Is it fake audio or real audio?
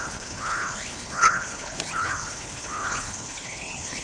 fake